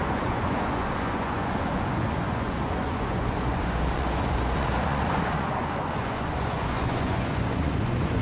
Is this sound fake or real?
fake